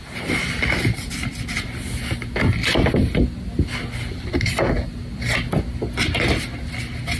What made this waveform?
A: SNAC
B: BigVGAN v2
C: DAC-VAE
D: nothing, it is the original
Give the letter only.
D